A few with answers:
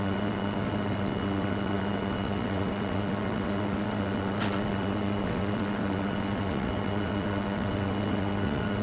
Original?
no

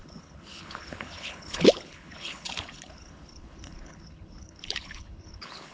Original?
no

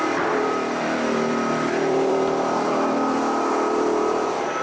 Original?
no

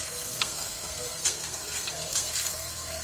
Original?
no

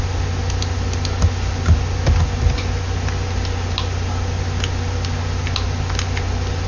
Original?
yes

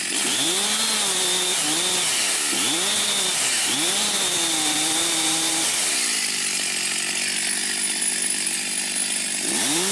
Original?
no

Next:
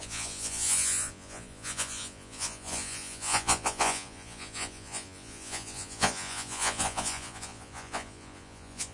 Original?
no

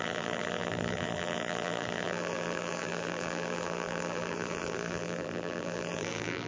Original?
no